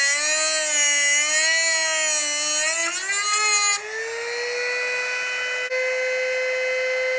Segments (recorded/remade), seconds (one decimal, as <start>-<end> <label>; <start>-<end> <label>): 0.0-7.2 recorded